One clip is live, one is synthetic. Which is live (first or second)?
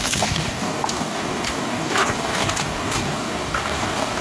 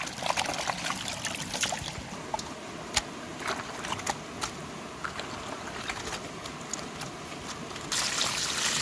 second